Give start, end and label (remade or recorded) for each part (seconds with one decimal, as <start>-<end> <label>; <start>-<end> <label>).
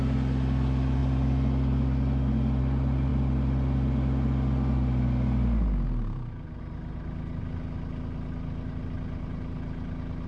0.0-10.3 recorded